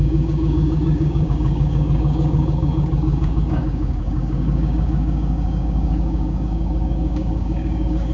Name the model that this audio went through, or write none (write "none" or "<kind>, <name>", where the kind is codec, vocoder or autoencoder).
codec, DAC